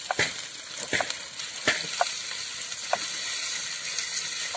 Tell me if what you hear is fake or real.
real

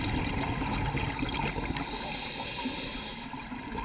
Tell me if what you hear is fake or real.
real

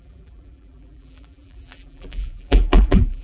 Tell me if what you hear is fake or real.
fake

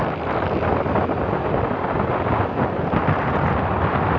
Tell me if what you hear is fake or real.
real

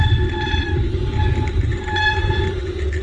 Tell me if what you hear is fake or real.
real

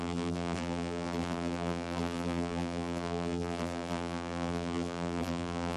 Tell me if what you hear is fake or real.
fake